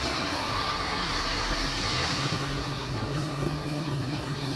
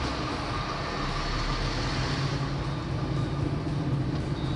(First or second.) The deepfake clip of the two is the first